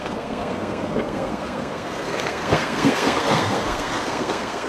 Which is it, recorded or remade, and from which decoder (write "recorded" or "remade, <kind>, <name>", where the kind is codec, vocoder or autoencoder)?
remade, codec, SNAC